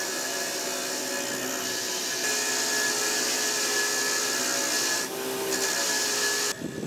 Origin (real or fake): real